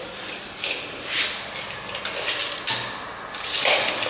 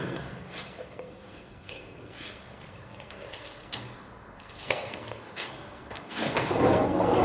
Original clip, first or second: first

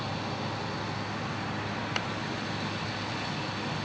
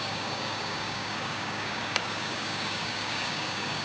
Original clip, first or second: first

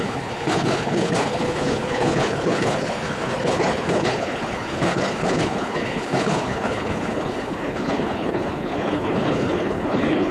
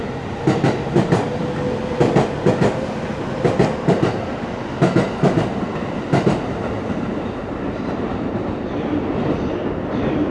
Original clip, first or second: second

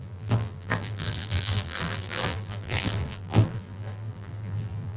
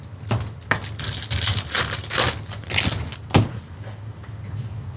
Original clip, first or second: second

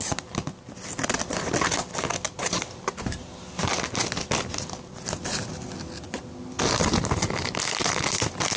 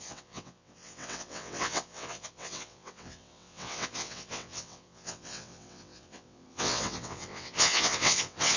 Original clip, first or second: first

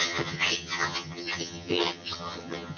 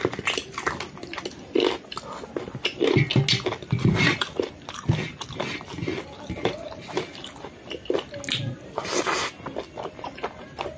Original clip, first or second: second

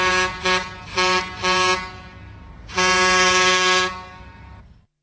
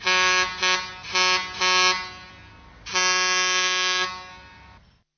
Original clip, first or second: second